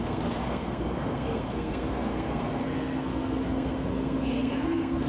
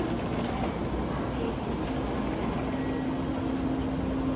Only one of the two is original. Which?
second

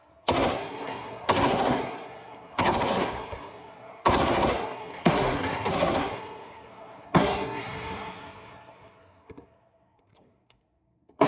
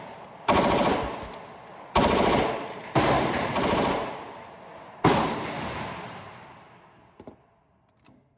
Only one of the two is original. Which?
second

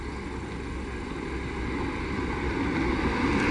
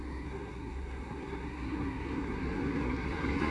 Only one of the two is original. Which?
first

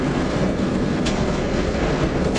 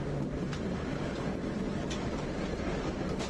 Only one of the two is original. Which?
second